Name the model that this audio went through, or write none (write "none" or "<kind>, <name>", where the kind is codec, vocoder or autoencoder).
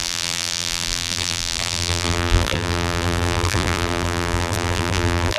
vocoder, BigVGAN v2